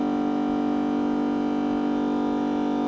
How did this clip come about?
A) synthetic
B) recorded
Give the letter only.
B